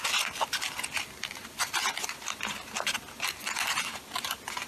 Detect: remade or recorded recorded